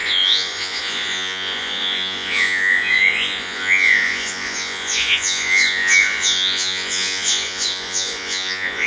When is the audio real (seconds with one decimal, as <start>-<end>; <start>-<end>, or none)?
none